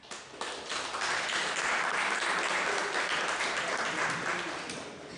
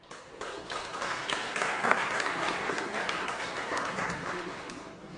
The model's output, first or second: second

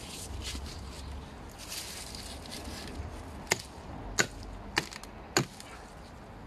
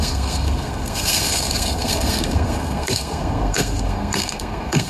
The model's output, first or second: second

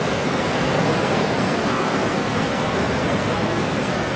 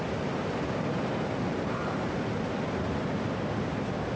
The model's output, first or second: first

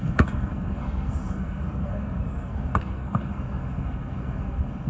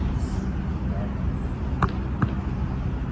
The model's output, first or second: first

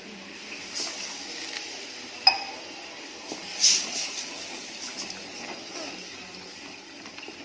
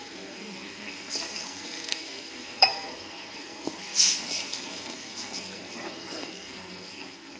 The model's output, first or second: second